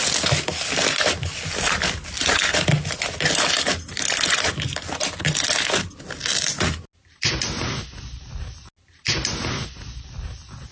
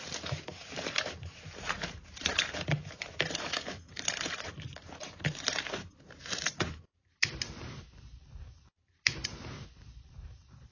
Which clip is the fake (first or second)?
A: second